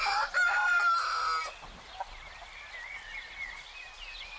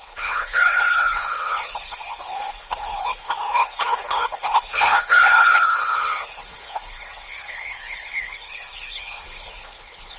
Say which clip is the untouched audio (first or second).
first